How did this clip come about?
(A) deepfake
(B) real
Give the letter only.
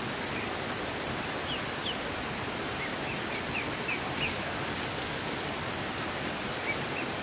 B